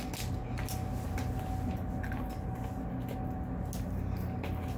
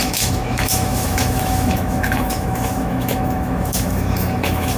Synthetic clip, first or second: second